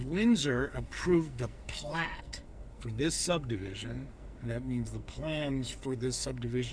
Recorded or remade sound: remade